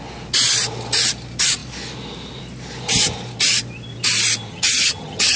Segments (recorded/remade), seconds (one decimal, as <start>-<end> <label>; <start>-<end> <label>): 0.0-4.5 recorded; 4.5-5.4 remade